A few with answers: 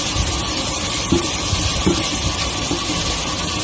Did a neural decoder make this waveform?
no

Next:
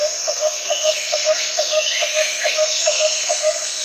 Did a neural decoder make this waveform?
yes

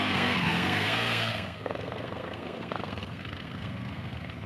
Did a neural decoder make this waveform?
yes